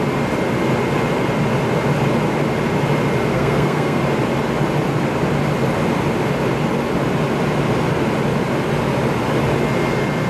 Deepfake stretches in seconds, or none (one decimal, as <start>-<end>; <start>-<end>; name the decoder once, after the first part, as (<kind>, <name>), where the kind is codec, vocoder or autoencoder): 3.3-4.0 (codec, SNAC)